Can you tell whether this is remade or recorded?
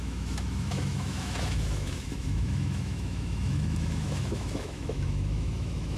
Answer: remade